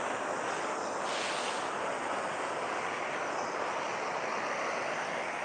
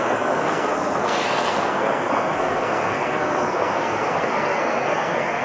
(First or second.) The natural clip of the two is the first